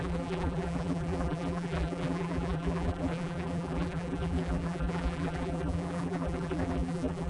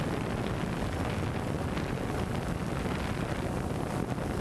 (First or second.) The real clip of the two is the second